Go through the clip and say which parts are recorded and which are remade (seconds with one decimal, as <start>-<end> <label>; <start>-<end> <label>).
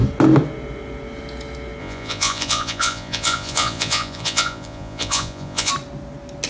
0.0-1.8 recorded; 1.8-5.7 remade; 5.7-6.5 recorded